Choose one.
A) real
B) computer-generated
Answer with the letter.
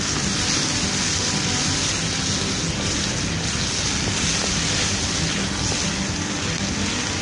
A